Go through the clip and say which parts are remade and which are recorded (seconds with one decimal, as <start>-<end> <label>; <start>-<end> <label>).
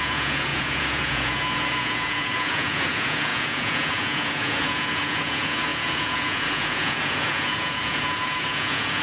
0.0-9.0 remade